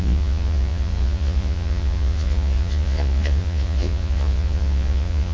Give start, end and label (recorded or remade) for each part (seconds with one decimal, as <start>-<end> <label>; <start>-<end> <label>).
0.0-5.3 remade